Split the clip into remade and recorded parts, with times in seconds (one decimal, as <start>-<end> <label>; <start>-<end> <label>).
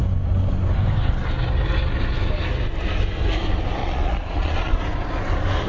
0.0-3.8 recorded; 3.8-4.8 remade; 4.8-5.7 recorded